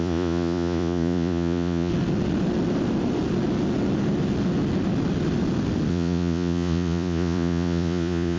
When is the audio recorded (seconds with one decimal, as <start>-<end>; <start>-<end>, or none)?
1.9-5.9